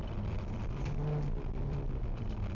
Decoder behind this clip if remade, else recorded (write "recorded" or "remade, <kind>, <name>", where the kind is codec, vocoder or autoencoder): remade, vocoder, BigVGAN v2